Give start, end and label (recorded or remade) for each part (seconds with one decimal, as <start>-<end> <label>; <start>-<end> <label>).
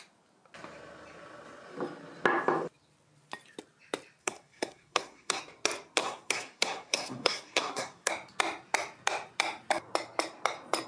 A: 0.0-4.2 recorded; 4.2-5.4 remade; 5.4-6.0 recorded; 6.0-8.1 remade; 8.1-10.9 recorded